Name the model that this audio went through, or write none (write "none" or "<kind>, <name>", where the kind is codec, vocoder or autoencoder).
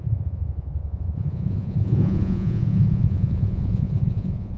vocoder, Vocos